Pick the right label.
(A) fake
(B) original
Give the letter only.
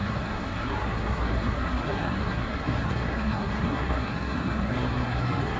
A